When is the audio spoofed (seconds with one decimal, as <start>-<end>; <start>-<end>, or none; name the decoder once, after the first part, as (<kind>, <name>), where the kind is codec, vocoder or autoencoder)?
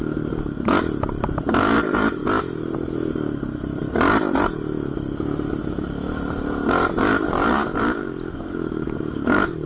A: 0.0-9.7 (vocoder, BigVGAN v2)